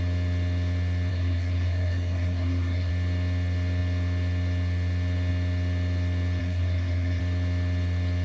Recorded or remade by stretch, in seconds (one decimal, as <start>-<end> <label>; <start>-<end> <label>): 0.0-1.1 recorded; 1.1-2.9 remade; 2.9-6.4 recorded; 6.4-7.2 remade; 7.2-8.2 recorded